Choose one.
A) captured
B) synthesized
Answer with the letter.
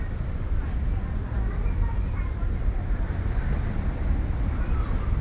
B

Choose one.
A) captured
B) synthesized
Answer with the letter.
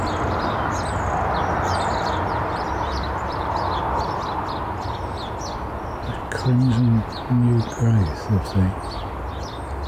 A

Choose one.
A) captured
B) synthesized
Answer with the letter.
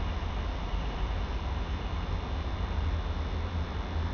A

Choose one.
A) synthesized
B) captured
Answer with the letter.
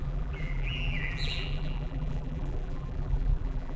A